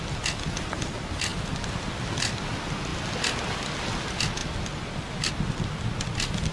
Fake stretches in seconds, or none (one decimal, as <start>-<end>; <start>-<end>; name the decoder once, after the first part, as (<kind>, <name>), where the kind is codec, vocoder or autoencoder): none